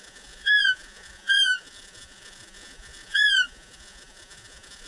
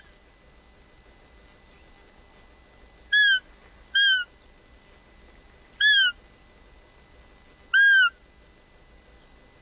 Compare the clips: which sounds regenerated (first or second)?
first